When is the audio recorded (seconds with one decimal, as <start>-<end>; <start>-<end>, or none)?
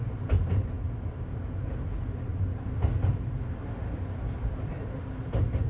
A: 0.0-5.7